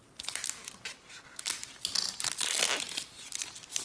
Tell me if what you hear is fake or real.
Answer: real